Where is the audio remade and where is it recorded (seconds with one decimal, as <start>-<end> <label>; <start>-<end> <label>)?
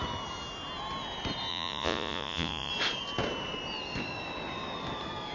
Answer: 0.0-1.5 recorded; 1.5-2.7 remade; 2.7-5.3 recorded